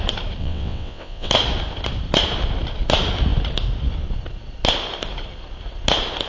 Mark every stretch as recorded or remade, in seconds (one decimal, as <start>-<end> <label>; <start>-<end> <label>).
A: 0.0-0.4 recorded; 0.4-1.3 remade; 1.3-6.3 recorded